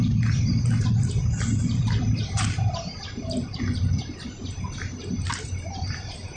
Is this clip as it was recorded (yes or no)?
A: no